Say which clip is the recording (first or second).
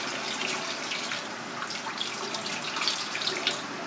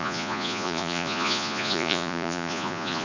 first